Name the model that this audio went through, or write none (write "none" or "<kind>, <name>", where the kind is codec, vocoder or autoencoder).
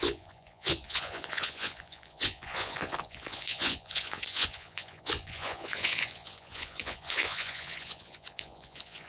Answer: vocoder, Vocos